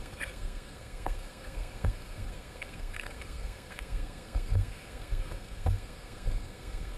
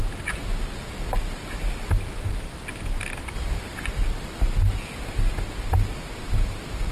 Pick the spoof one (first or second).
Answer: first